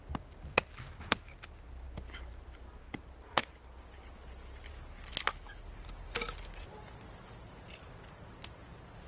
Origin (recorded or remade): recorded